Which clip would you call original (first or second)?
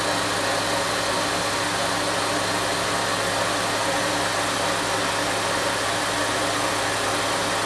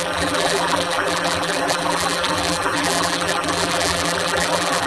first